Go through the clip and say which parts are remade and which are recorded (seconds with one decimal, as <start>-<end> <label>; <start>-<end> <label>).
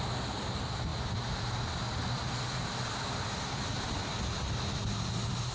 0.0-5.5 recorded